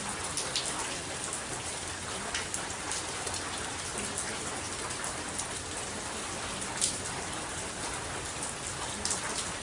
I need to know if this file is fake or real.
real